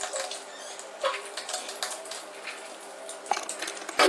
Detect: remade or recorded recorded